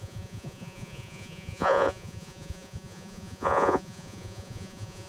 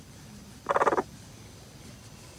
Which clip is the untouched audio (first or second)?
second